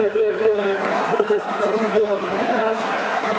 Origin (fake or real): fake